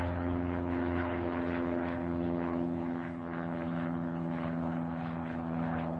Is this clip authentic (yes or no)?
no